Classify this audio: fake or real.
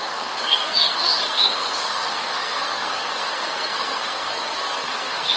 fake